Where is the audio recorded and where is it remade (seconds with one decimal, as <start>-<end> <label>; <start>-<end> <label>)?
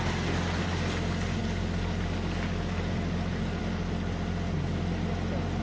0.0-5.6 recorded